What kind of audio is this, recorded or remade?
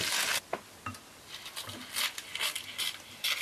recorded